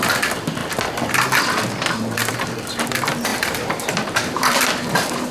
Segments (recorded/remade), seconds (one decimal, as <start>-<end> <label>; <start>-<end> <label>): 0.0-3.3 recorded; 3.3-5.3 remade